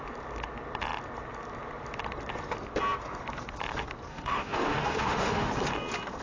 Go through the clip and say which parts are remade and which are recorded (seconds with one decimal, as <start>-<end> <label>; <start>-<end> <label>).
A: 0.0-4.1 recorded; 4.1-5.5 remade; 5.5-6.2 recorded